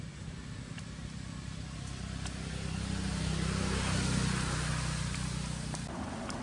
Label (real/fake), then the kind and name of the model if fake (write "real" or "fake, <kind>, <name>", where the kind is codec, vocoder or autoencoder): real